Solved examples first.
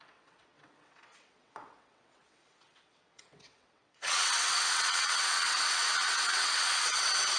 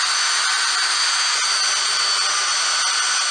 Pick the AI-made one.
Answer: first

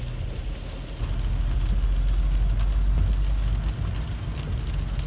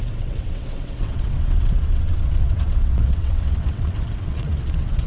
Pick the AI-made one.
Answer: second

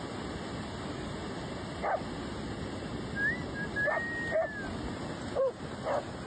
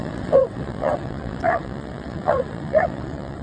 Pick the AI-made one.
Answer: second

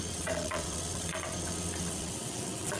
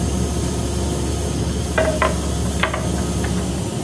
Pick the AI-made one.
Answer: first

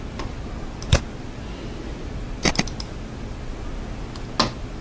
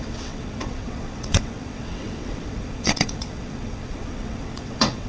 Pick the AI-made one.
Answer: second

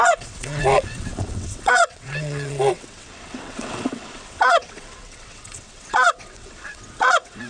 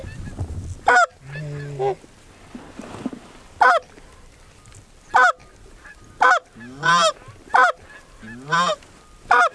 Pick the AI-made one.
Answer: first